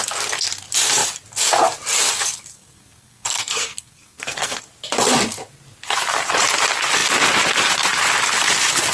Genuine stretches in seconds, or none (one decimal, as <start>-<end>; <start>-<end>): 0.0-2.5; 4.6-8.9